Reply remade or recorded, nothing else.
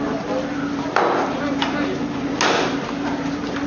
recorded